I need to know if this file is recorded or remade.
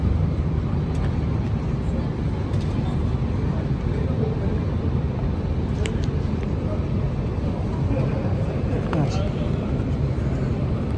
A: recorded